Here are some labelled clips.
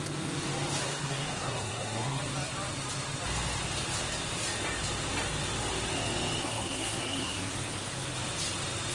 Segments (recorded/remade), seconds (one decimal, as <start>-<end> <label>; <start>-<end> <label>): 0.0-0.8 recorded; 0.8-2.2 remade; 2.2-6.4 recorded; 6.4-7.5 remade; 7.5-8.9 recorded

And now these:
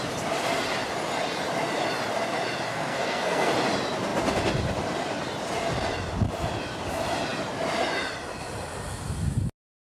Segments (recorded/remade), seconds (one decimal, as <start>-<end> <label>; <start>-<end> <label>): 0.0-2.7 recorded; 2.7-3.5 remade; 3.5-9.9 recorded

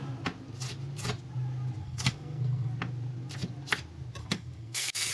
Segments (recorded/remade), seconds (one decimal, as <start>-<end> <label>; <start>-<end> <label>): 0.0-1.8 recorded; 1.8-2.7 remade; 2.7-4.2 recorded; 4.2-5.1 remade